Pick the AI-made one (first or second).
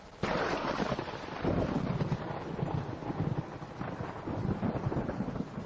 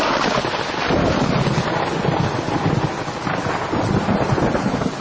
first